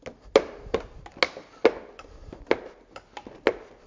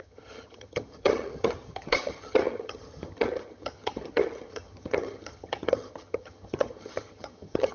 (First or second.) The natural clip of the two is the first